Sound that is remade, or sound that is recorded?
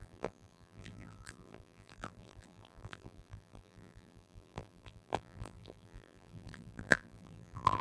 remade